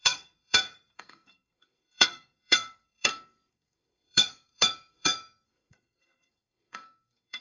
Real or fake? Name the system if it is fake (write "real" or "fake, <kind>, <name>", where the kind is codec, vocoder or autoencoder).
fake, codec, SNAC